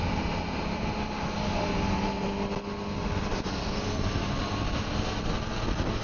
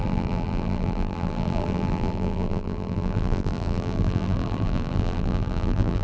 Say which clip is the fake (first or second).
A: second